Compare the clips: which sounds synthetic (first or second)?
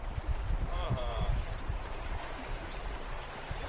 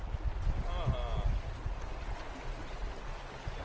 first